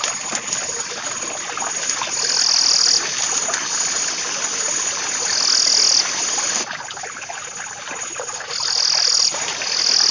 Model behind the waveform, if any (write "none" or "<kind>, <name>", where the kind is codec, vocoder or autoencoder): none